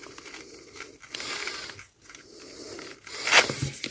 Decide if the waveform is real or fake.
real